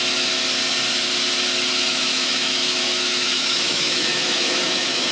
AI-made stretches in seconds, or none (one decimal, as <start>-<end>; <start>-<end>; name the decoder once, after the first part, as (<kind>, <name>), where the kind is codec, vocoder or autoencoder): 1.7-5.1 (autoencoder, DAC-VAE)